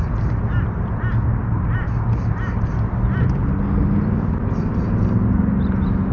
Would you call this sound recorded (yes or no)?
yes